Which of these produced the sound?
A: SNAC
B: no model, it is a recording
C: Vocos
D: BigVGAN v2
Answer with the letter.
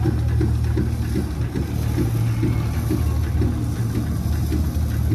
B